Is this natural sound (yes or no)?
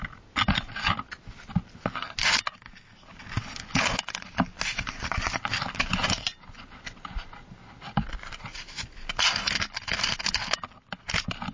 yes